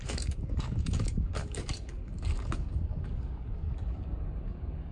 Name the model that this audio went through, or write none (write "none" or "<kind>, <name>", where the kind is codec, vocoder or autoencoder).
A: codec, DAC